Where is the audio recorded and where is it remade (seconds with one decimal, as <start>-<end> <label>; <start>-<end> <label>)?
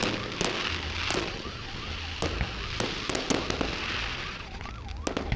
0.0-1.1 recorded; 1.1-1.7 remade; 1.7-4.1 recorded; 4.1-4.7 remade; 4.7-5.4 recorded